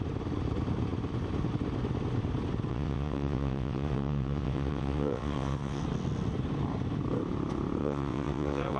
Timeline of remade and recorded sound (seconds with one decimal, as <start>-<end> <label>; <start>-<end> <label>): 0.0-2.7 recorded; 2.7-5.8 remade; 5.8-7.8 recorded; 7.8-8.8 remade